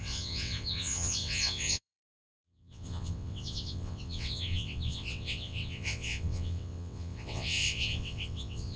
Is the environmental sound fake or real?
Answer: fake